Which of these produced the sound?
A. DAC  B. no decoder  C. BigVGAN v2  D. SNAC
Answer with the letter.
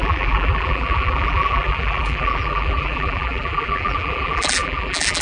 C